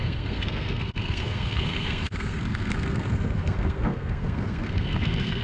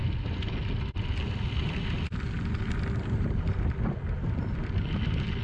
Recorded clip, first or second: second